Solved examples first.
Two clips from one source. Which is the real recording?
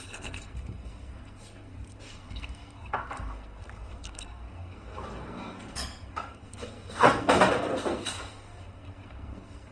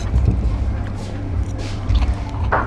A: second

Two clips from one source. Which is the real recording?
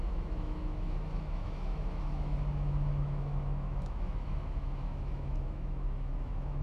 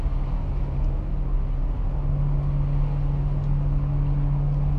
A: second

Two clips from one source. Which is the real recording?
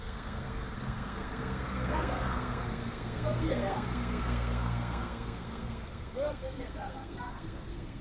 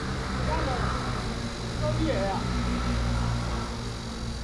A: second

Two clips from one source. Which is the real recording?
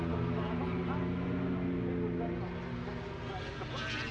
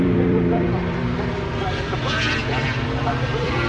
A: first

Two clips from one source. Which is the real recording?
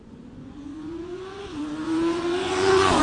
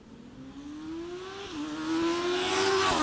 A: second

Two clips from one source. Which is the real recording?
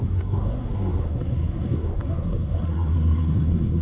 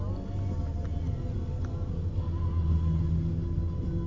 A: second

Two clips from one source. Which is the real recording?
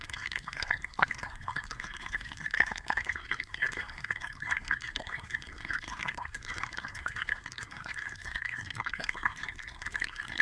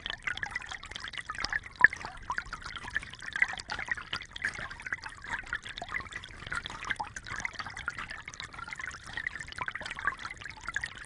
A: second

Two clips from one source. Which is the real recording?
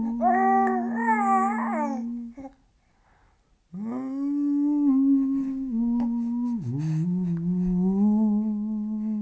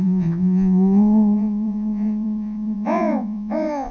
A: first